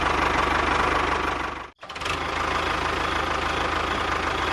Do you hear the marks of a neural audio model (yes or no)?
no